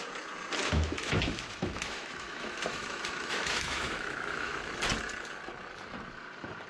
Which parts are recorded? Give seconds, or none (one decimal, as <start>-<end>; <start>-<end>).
0.0-0.6; 4.6-6.7